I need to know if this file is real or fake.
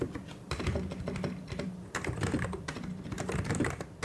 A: fake